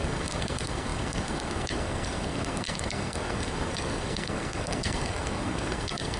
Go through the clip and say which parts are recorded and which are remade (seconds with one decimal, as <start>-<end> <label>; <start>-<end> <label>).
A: 0.0-6.2 remade